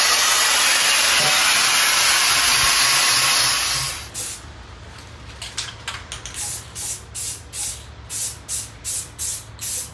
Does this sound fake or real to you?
real